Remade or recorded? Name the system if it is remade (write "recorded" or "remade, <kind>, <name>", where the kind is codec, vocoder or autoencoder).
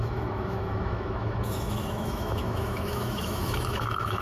remade, autoencoder, DAC-VAE